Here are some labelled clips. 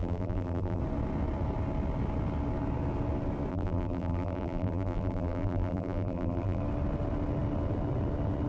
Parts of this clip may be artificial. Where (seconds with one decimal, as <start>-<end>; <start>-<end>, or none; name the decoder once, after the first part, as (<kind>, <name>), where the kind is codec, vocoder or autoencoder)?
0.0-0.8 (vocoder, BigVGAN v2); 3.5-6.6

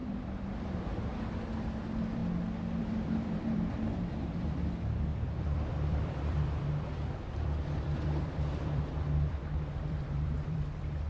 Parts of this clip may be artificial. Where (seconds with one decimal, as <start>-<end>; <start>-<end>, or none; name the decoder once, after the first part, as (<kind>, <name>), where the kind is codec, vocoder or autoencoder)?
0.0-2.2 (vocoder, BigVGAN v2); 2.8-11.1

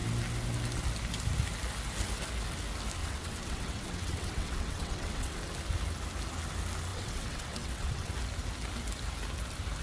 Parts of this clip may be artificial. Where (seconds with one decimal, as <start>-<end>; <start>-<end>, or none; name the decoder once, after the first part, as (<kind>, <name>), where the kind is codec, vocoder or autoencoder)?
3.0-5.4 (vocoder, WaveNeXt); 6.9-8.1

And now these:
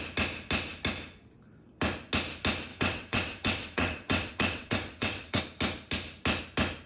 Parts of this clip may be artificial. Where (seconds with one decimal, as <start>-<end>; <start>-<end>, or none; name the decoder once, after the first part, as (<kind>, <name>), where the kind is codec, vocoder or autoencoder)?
2.7-5.4 (vocoder, WaveNeXt)

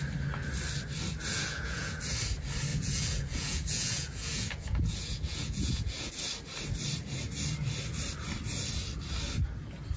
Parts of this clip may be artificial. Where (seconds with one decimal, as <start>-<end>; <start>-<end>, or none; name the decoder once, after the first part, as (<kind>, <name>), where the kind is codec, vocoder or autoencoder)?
1.3-2.0 (vocoder, Vocos); 2.7-6.1

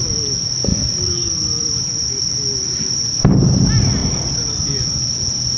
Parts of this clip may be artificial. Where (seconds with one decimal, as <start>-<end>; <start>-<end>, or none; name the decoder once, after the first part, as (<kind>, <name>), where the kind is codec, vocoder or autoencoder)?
0.7-2.2 (vocoder, BigVGAN v2)